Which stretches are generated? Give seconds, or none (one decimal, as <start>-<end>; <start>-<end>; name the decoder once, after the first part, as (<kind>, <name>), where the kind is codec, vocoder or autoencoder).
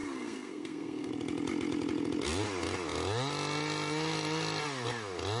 0.0-1.1 (codec, SNAC)